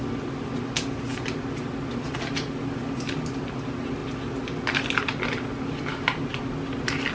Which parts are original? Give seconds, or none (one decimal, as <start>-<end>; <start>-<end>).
0.0-7.1